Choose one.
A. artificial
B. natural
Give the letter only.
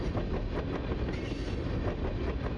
B